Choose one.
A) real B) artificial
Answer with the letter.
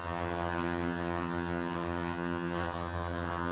B